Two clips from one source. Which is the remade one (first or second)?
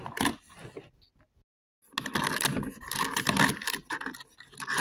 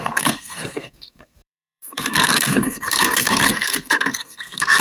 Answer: second